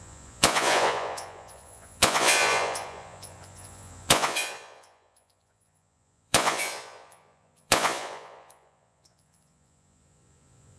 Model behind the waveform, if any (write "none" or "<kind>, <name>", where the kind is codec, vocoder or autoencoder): vocoder, Vocos